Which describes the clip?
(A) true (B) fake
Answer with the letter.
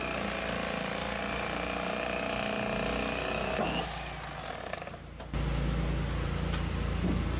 A